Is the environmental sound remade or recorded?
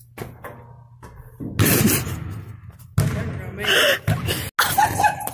recorded